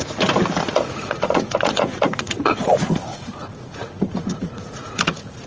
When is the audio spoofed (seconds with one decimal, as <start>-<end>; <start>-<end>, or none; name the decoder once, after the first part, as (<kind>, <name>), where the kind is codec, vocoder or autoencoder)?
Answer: 0.7-2.6 (vocoder, Vocos); 3.1-5.5